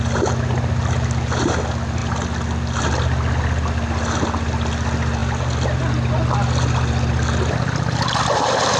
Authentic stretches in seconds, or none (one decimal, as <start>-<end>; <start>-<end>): 0.0-8.8